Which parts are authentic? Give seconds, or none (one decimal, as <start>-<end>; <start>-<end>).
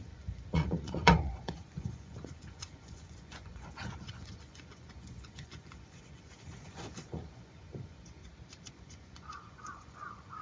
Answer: 8.2-8.7